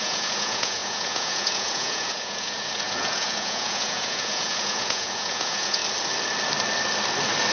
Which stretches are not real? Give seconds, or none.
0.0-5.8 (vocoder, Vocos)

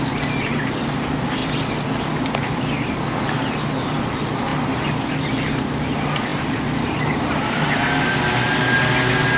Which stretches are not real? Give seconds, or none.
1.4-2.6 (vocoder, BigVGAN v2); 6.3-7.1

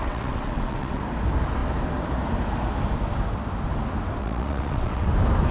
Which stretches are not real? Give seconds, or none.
0.0-1.0 (vocoder, WaveNeXt); 4.2-5.1

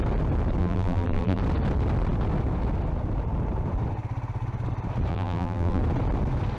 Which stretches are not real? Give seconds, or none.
0.6-1.4 (vocoder, BigVGAN v2); 5.1-5.8

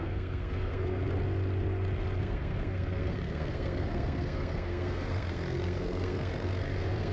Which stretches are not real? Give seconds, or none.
0.0-1.0 (codec, SNAC); 2.2-7.1

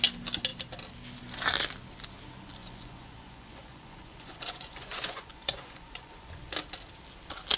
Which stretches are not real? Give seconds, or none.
2.6-6.5 (vocoder, Vocos)

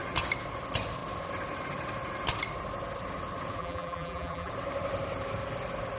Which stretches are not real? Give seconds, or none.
3.6-4.5 (vocoder, BigVGAN v2)